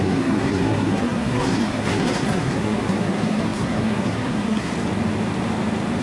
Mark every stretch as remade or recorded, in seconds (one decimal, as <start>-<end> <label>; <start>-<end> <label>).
0.0-4.7 remade; 4.7-6.0 recorded